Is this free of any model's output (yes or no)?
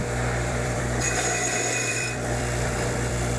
no